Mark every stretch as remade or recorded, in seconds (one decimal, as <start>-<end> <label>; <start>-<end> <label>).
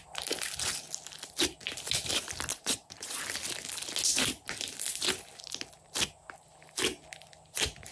0.0-2.5 recorded; 2.5-3.2 remade; 3.2-7.9 recorded